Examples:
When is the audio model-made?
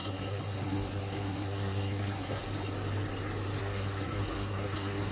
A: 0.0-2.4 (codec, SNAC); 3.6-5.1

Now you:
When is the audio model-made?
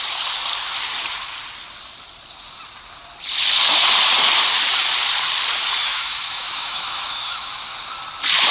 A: 5.9-7.6 (autoencoder, DAC-VAE)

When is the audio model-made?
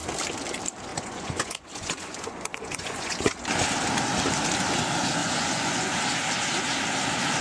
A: 0.9-3.4 (vocoder, Vocos); 5.2-6.0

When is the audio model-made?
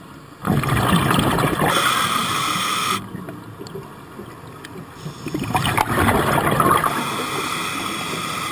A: none